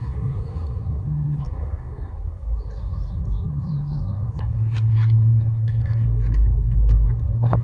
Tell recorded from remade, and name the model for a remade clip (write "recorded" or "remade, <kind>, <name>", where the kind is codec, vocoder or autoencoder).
remade, codec, SNAC